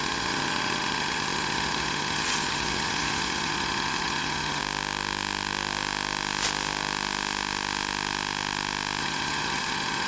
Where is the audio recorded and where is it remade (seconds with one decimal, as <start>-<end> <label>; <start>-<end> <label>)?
0.0-4.6 remade; 4.6-9.0 recorded; 9.0-10.1 remade